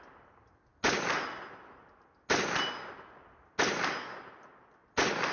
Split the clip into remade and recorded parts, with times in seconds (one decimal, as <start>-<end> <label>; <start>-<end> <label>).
0.0-5.3 recorded